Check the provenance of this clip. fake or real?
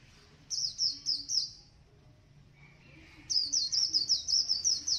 real